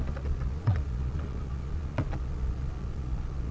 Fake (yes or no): yes